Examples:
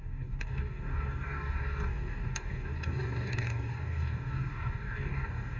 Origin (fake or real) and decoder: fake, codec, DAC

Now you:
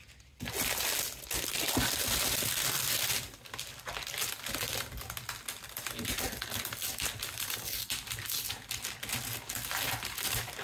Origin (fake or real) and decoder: real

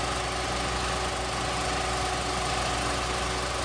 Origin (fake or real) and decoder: real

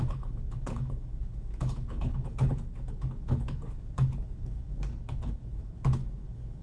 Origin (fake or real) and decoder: fake, codec, HILCodec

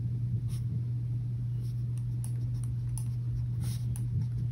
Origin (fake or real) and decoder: real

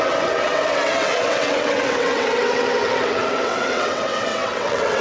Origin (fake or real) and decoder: fake, vocoder, WaveNeXt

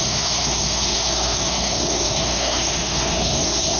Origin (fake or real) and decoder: fake, codec, SNAC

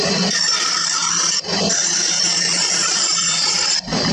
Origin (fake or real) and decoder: fake, vocoder, BigVGAN v2